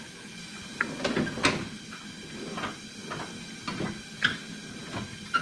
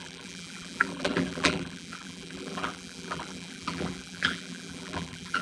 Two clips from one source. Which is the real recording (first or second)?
first